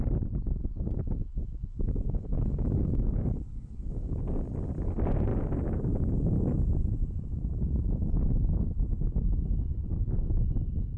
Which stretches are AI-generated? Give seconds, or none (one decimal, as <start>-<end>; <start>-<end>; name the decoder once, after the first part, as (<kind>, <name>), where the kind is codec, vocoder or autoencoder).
1.3-4.2 (codec, DAC)